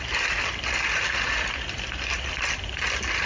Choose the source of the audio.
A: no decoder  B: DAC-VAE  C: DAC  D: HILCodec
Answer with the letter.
A